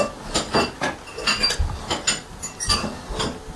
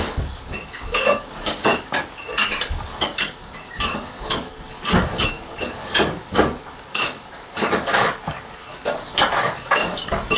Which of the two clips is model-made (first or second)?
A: second